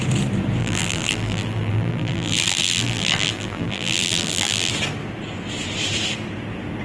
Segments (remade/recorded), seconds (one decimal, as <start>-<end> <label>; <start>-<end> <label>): 0.0-0.6 recorded; 0.6-4.7 remade; 4.7-6.8 recorded